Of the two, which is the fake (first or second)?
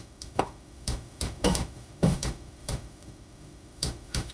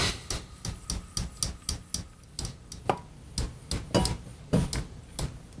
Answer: first